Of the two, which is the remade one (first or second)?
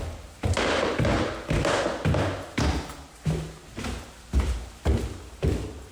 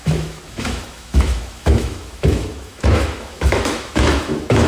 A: second